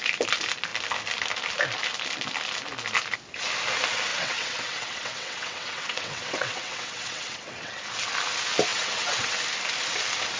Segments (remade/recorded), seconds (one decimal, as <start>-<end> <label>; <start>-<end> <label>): 0.0-4.1 recorded; 4.1-7.8 remade; 7.8-8.7 recorded; 8.7-9.4 remade; 9.4-10.4 recorded